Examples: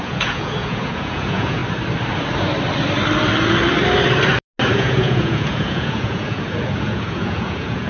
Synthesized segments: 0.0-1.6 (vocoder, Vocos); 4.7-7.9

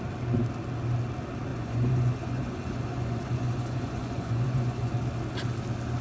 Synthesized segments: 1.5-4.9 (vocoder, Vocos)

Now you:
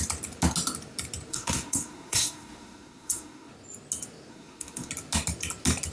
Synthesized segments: 1.3-3.5 (codec, SNAC); 4.3-4.9

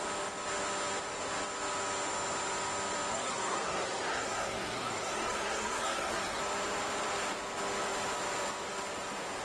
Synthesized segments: 3.1-6.4 (codec, SNAC)

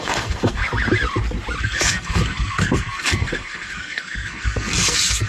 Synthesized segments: 0.0-0.6 (codec, SNAC); 1.6-5.3